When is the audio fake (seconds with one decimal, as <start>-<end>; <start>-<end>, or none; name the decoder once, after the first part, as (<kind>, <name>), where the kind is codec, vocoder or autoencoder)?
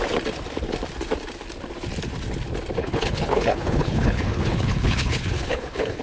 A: 2.8-6.0 (codec, HILCodec)